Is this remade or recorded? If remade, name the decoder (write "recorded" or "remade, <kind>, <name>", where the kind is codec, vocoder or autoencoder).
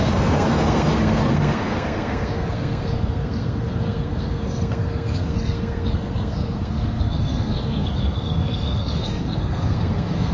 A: remade, codec, SNAC